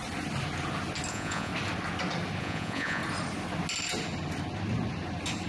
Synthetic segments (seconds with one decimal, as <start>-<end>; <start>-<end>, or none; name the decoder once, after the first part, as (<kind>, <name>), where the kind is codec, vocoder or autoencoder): 1.1-1.5 (vocoder, Vocos); 2.4-3.0